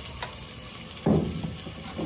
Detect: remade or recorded recorded